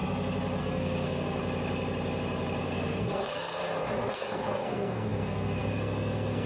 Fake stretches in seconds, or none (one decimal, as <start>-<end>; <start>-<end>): 0.6-1.4; 2.6-3.6; 4.1-6.5